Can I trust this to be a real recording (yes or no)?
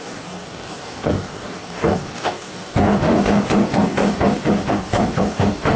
no